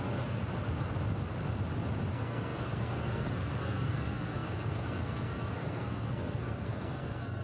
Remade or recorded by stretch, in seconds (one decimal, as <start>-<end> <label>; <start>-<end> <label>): 0.0-0.4 remade; 0.4-2.1 recorded; 2.1-7.4 remade